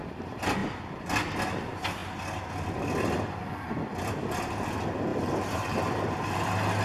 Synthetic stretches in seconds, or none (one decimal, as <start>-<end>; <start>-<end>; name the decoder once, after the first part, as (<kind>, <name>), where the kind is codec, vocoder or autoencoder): 5.1-6.3 (vocoder, BigVGAN v2)